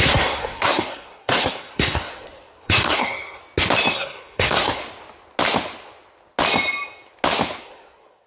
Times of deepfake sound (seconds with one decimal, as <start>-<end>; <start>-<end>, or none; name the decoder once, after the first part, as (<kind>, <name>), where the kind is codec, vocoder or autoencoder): 0.0-3.4 (codec, SNAC); 3.9-4.8; 7.6-8.3